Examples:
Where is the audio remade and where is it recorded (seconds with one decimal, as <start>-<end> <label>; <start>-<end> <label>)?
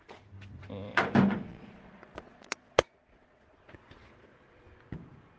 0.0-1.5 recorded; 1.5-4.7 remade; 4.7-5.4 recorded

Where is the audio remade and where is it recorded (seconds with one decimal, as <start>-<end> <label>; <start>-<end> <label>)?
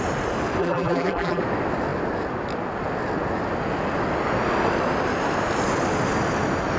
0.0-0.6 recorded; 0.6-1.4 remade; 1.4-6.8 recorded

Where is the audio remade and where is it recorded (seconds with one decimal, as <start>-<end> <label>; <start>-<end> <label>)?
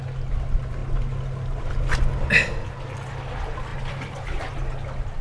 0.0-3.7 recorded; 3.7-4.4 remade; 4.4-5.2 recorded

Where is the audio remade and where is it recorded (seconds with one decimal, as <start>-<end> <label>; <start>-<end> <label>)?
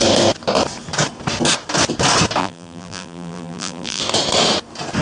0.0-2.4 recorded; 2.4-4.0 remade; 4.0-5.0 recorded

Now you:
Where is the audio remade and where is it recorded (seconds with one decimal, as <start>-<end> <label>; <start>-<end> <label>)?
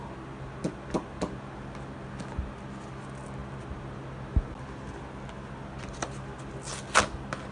0.0-7.5 recorded